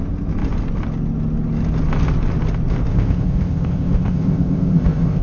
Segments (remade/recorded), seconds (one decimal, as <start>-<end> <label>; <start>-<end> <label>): 0.0-2.9 recorded; 2.9-5.2 remade

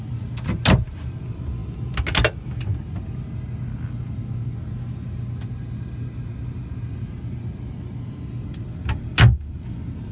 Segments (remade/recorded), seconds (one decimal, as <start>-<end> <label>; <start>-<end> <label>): 0.0-10.1 recorded

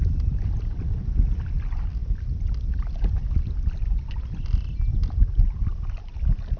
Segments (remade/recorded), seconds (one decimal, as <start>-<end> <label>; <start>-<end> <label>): 0.0-6.6 recorded

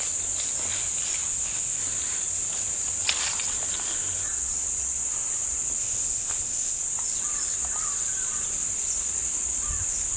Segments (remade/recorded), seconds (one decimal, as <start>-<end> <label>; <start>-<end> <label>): 0.0-1.3 recorded; 1.3-1.8 remade; 1.8-5.8 recorded; 5.8-6.8 remade; 6.8-10.2 recorded

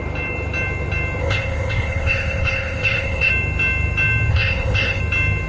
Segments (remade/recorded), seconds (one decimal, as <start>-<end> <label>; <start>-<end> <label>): 0.0-1.2 recorded; 1.2-3.3 remade; 3.3-4.3 recorded; 4.3-5.0 remade; 5.0-5.5 recorded

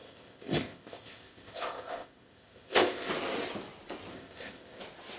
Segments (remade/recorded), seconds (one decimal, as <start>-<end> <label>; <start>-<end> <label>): 0.0-3.1 remade; 3.1-4.1 recorded; 4.1-4.8 remade; 4.8-5.2 recorded

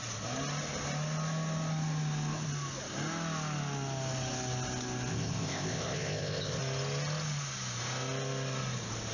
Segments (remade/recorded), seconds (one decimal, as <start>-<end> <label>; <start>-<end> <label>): 0.0-5.1 recorded; 5.1-6.6 remade; 6.6-9.1 recorded